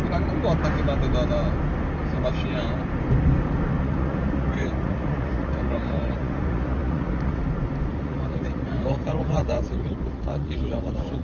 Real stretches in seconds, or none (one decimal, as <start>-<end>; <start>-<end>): 0.0-3.8; 7.4-7.9